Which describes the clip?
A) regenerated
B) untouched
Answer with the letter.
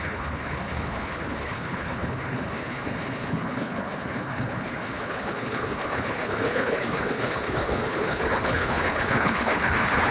A